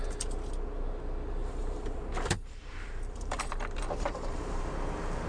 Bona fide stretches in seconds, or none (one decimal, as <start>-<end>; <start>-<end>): 0.0-1.4; 4.6-5.3